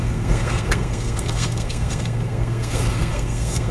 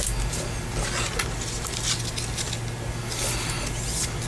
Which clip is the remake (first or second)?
first